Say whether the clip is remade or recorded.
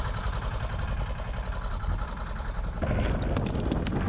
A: recorded